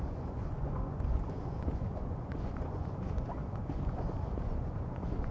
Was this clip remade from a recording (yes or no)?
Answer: yes